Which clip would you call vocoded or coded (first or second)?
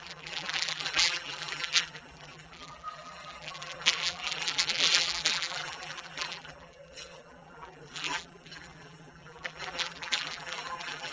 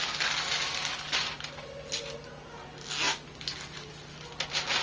first